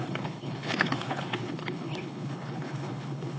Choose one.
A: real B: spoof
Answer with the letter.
B